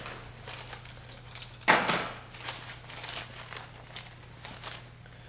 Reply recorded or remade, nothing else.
recorded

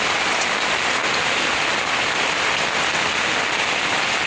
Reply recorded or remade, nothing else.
recorded